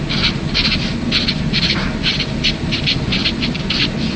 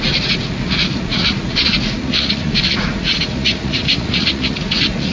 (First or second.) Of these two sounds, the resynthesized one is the second